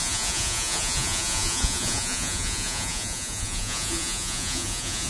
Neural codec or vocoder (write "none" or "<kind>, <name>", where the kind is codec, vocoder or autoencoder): vocoder, Vocos